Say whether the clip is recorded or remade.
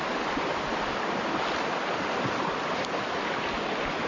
recorded